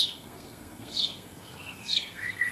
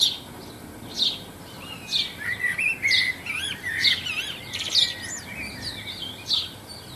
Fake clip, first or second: first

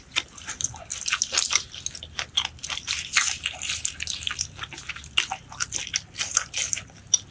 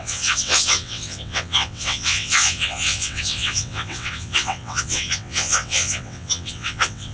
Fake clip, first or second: second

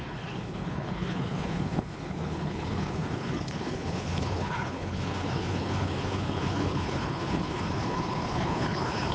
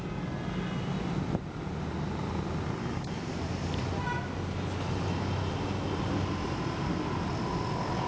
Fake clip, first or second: first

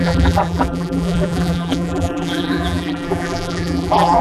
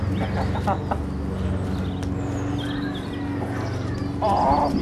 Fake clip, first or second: first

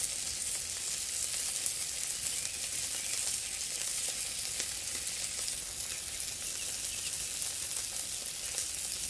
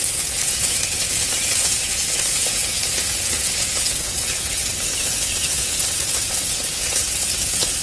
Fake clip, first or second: second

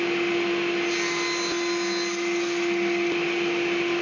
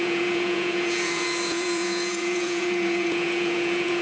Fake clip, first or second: second